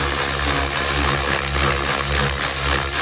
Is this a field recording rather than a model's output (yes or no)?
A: yes